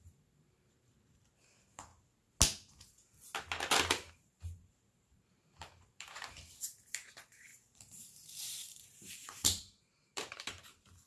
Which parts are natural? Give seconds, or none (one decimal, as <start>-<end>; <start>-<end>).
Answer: 1.9-4.1